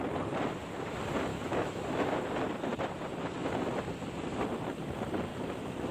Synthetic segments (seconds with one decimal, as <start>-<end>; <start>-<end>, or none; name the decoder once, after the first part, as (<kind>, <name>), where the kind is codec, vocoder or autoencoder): 1.3-2.1 (autoencoder, DAC-VAE); 5.3-5.9